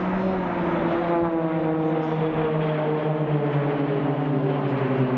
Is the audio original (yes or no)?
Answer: yes